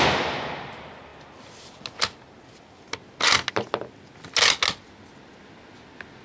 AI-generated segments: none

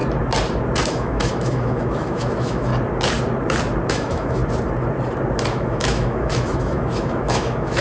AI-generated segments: 0.9-2.7 (autoencoder, DAC-VAE); 3.9-4.4; 5.5-7.8

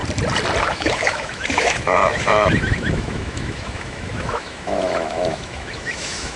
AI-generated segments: 0.6-6.4 (autoencoder, DAC-VAE)

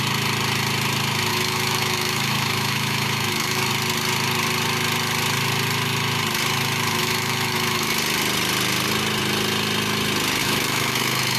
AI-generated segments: 1.3-3.7 (autoencoder, DAC-VAE); 7.0-7.9; 10.4-11.4